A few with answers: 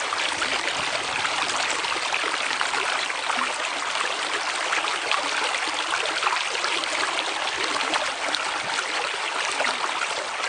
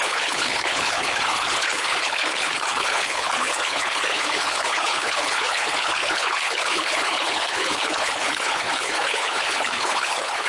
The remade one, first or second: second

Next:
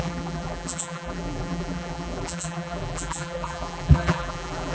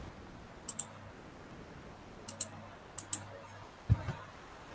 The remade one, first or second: first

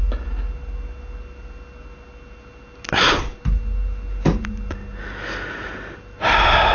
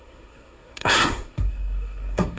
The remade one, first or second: second